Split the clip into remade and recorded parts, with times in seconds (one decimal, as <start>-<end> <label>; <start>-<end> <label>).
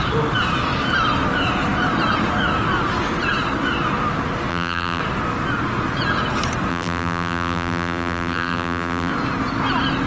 0.0-4.5 recorded; 4.5-5.0 remade; 5.0-6.7 recorded; 6.7-9.1 remade; 9.1-10.1 recorded